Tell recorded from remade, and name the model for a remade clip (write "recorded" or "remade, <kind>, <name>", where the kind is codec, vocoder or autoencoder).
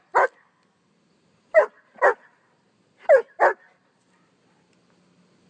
recorded